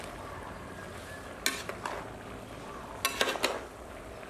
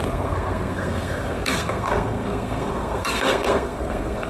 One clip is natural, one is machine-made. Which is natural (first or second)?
first